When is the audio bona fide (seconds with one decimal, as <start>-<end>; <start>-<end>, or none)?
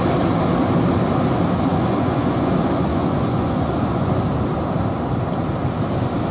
0.0-1.7; 2.5-2.9; 4.2-6.3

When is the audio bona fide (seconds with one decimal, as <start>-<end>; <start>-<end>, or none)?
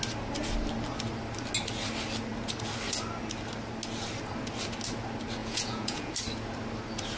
0.0-5.4; 6.1-7.2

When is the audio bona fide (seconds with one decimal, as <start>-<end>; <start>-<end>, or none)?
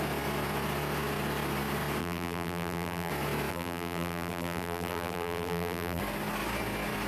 0.0-2.0; 3.1-3.5; 6.0-7.1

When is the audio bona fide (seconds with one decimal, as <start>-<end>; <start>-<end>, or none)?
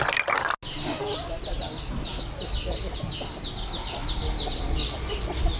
0.0-5.6